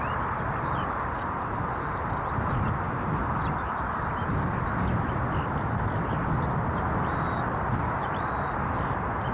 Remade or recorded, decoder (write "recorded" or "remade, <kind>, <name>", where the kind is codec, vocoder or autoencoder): recorded